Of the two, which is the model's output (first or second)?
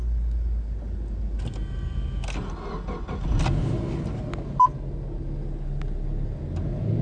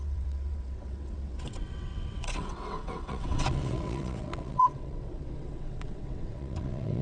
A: second